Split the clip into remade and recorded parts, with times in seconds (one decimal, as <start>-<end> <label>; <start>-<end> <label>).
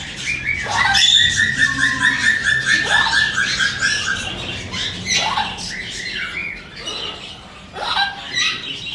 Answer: 0.0-8.9 recorded